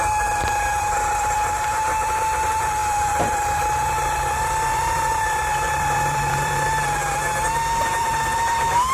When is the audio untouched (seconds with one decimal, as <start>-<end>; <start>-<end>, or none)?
7.0-7.9